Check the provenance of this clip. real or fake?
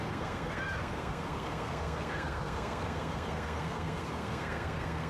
fake